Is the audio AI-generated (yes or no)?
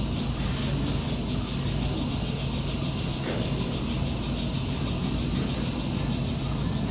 no